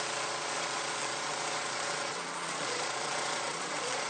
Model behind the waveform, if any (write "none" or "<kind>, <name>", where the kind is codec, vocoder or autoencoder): vocoder, Vocos